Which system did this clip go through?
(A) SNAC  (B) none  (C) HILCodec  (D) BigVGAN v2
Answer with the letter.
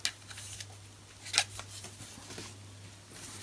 B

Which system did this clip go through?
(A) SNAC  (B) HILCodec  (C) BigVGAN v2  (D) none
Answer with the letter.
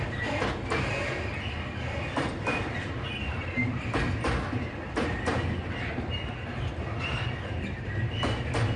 D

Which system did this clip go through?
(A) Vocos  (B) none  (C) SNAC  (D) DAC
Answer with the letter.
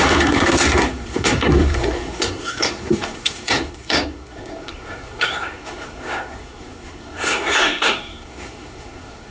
C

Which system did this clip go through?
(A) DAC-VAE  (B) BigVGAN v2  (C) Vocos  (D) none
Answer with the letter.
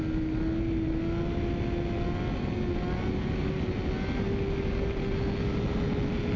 D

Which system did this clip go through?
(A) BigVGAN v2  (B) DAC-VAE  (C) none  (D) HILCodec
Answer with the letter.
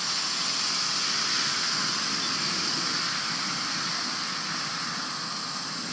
C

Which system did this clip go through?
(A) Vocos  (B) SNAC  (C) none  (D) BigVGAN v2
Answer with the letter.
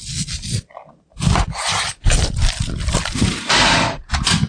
D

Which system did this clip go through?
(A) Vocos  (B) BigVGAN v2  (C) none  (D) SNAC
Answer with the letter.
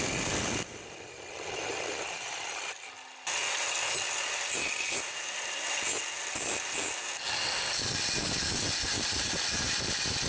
C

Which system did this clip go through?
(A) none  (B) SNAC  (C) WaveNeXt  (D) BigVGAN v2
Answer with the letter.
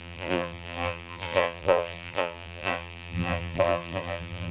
D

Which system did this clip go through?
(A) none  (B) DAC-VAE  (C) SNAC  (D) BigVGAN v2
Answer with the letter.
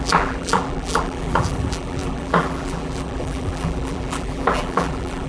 D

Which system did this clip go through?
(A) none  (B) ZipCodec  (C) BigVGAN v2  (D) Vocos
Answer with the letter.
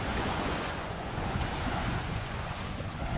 D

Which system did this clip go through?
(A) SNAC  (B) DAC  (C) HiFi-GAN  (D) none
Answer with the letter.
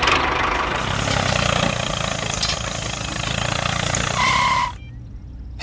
D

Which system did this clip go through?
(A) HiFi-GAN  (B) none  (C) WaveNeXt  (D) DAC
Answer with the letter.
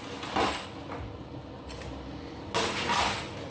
B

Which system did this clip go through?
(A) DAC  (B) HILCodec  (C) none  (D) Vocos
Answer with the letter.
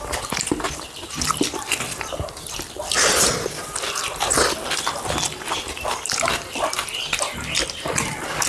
C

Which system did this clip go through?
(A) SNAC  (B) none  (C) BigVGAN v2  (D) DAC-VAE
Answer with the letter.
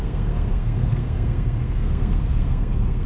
A